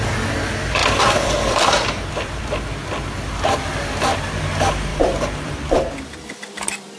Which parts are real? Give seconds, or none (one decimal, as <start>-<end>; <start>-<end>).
0.0-0.8; 2.4-4.9